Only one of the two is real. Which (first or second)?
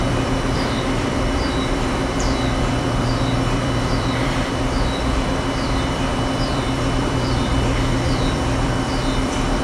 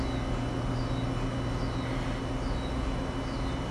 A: second